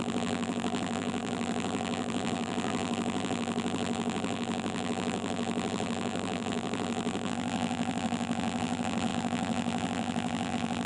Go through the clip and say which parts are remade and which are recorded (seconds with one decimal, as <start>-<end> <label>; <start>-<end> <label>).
0.0-10.9 remade